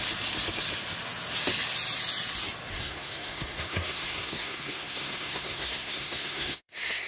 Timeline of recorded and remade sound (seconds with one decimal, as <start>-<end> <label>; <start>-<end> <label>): 0.0-2.7 recorded; 2.7-7.1 remade